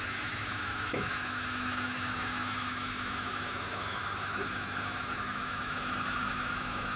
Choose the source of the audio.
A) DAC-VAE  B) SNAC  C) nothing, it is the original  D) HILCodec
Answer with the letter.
A